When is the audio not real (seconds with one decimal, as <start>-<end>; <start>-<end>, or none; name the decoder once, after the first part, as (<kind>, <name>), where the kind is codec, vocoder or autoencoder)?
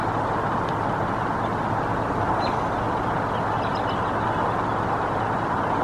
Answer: none